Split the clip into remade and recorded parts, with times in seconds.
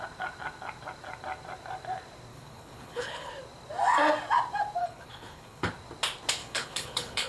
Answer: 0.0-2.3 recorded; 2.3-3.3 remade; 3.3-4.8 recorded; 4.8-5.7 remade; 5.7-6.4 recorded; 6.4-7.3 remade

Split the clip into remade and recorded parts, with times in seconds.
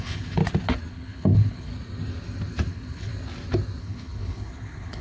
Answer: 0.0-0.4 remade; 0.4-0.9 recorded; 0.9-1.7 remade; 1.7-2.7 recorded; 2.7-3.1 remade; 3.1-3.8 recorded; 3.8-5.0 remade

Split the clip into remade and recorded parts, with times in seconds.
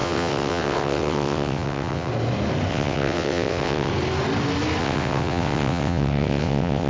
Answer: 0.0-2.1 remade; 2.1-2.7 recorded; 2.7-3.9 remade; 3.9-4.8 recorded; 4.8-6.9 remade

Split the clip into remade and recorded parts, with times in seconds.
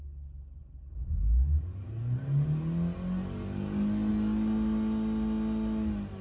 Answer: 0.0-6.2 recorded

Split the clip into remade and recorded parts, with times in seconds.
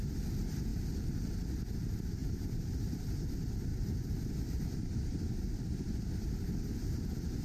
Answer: 0.0-0.7 recorded; 0.7-1.3 remade; 1.3-2.2 recorded; 2.2-3.2 remade; 3.2-3.7 recorded; 3.7-6.1 remade; 6.1-7.4 recorded